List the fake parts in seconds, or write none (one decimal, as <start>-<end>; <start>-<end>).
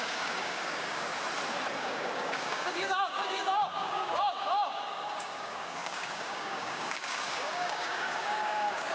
0.0-1.1; 1.8-8.9